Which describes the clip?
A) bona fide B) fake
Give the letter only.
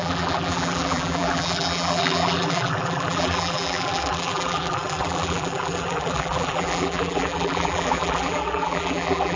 B